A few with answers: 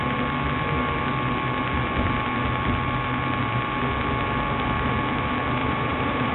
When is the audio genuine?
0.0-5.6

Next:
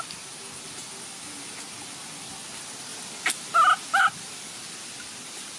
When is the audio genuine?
0.0-0.8; 2.3-2.9; 4.0-5.6

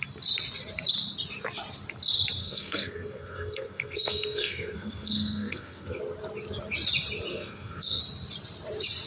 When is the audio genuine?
0.0-2.4; 6.0-7.3; 8.0-9.1

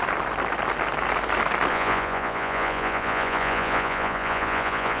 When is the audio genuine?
0.0-1.7

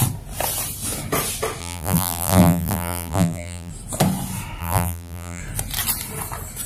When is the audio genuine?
0.0-1.6; 3.7-4.6; 5.4-6.7

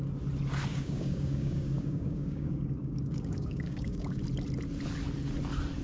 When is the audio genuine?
0.0-0.7; 4.2-5.8

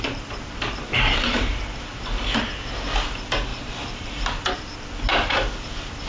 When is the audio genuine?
0.0-0.9; 1.5-3.5; 4.2-6.1

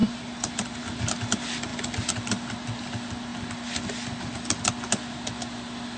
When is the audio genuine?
0.0-6.0